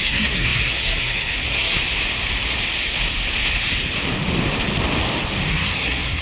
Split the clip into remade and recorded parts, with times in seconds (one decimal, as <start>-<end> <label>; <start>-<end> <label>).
0.0-1.8 remade; 1.8-5.5 recorded; 5.5-6.2 remade